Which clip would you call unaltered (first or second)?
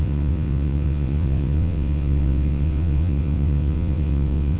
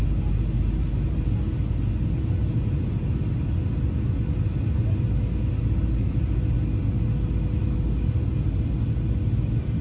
second